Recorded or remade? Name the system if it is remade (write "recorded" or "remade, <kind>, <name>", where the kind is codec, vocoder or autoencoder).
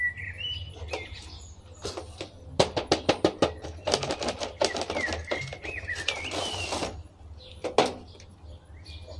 recorded